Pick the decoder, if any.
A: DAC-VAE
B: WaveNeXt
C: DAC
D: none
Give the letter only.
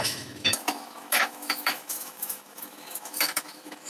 A